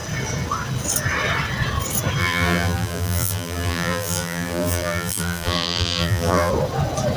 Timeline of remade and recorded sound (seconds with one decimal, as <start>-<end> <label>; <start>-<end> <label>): 0.0-2.2 recorded; 2.2-6.5 remade; 6.5-7.2 recorded

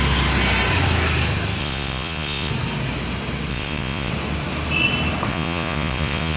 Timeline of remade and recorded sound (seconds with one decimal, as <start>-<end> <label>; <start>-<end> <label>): 0.0-1.6 recorded; 1.6-2.5 remade; 2.5-3.5 recorded; 3.5-4.1 remade; 4.1-5.3 recorded; 5.3-6.4 remade

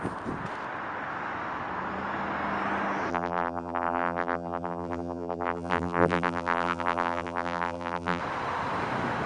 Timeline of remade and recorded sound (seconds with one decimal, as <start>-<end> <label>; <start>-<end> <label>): 0.0-3.1 recorded; 3.1-8.2 remade; 8.2-9.3 recorded